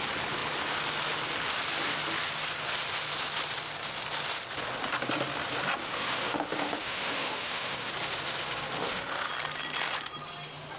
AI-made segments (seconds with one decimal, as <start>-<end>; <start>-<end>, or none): 5.8-7.9; 8.8-9.3